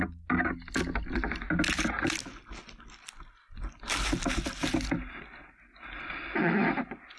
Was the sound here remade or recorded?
recorded